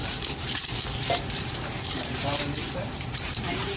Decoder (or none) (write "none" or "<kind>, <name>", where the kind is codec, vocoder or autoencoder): vocoder, BigVGAN v2